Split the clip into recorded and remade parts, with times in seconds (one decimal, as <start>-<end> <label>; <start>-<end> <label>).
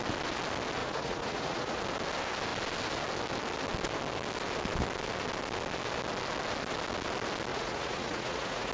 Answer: 0.0-0.8 recorded; 0.8-1.8 remade; 1.8-7.5 recorded; 7.5-8.7 remade